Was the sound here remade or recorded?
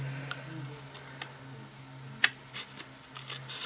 recorded